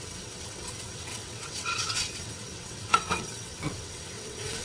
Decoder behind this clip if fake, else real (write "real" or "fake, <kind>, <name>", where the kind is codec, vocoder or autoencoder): fake, vocoder, WaveNeXt